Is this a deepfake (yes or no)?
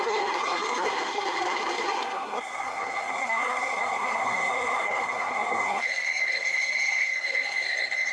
yes